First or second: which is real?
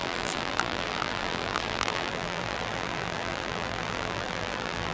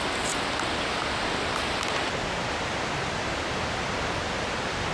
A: second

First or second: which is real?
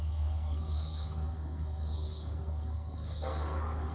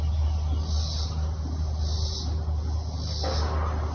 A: second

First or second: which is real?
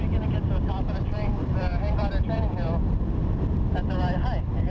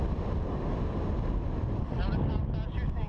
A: second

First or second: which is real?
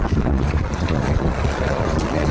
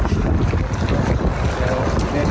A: second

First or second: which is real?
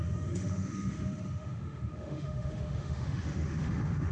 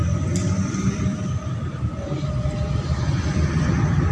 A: second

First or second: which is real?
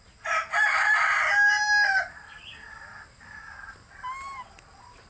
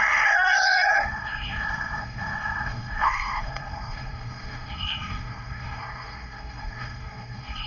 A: first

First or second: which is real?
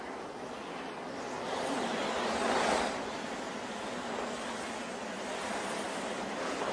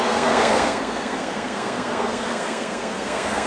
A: first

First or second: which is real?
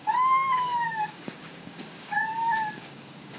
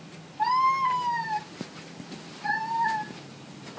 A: second